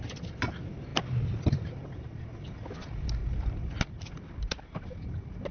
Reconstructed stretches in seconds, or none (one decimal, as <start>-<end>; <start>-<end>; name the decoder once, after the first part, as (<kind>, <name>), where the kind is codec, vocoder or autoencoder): none